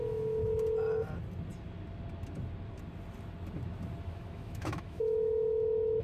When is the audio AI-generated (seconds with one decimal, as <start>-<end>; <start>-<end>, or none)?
0.0-0.4; 4.0-6.0